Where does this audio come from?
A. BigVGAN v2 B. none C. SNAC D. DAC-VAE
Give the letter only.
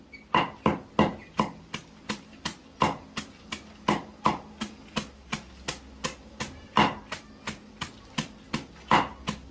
B